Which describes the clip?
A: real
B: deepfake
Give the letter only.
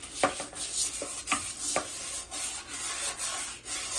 A